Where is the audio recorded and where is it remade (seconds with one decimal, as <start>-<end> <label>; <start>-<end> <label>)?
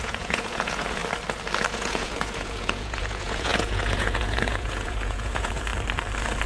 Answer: 0.0-1.0 remade; 1.0-1.7 recorded; 1.7-5.7 remade; 5.7-6.5 recorded